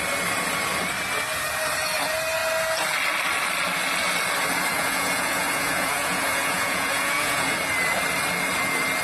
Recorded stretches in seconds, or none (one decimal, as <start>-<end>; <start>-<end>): 0.0-4.7; 7.6-9.0